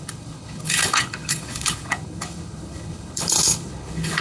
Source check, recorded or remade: remade